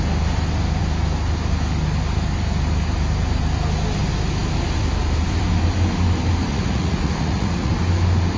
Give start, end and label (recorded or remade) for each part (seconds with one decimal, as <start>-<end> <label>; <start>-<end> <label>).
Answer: 0.0-6.5 recorded; 6.5-7.7 remade; 7.7-8.4 recorded